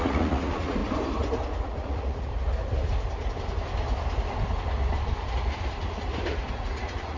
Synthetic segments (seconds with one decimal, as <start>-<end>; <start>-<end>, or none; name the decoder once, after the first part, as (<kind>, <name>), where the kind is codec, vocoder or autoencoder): 0.0-0.8 (vocoder, Vocos); 1.6-2.3; 6.5-7.2